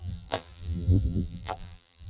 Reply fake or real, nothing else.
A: fake